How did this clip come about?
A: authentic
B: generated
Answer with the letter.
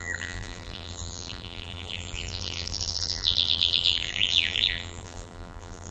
B